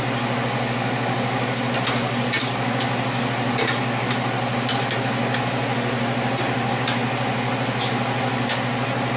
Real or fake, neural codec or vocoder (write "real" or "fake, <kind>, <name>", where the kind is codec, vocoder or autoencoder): real